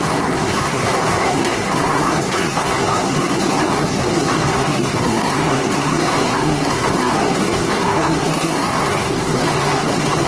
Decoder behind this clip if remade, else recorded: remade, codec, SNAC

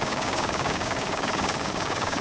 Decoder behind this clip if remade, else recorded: remade, codec, DAC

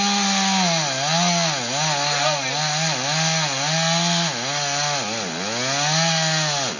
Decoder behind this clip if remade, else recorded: recorded